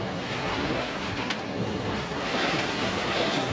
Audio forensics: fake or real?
fake